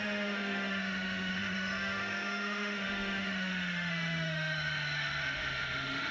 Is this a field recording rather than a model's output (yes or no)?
no